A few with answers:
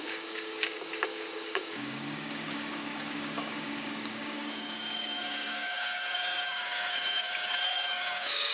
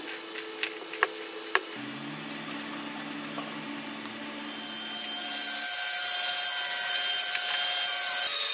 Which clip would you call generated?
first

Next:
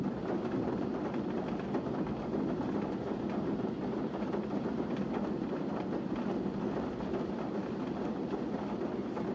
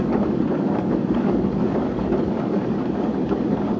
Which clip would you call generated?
second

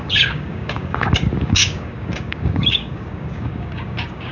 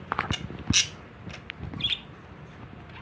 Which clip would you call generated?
first